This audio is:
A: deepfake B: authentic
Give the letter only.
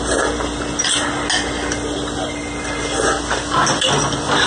B